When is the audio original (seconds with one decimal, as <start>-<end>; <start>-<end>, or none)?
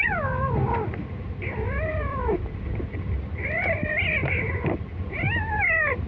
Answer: 0.0-1.9; 3.6-4.2; 4.9-6.1